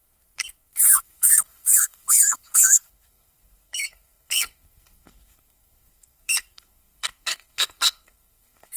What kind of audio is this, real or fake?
fake